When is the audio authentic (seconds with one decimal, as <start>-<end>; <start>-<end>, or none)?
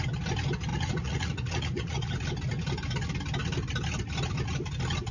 0.0-0.7; 2.1-5.1